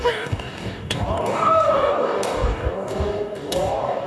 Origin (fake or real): fake